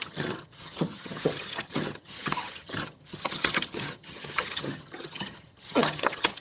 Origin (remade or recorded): remade